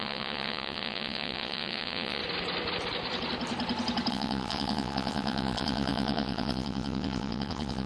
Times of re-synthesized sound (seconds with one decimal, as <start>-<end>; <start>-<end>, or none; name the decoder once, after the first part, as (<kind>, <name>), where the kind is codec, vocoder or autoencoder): 0.0-2.2 (vocoder, WaveNeXt); 4.1-7.9